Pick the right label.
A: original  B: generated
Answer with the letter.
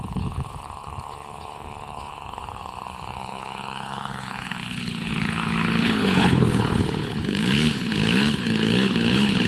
B